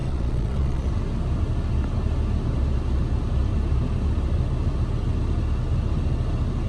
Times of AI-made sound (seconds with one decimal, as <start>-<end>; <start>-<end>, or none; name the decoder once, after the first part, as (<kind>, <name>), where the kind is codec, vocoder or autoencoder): 0.0-0.9 (vocoder, Vocos)